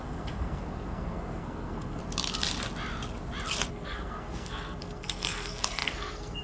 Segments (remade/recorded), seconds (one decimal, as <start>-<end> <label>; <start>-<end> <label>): 0.0-2.0 remade; 2.0-3.7 recorded; 3.7-6.4 remade